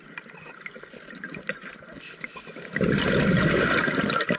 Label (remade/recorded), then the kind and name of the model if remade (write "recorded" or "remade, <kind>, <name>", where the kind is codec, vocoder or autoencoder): recorded